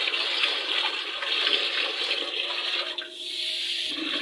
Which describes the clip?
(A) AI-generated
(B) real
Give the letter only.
B